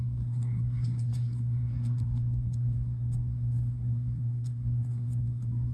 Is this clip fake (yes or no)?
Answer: yes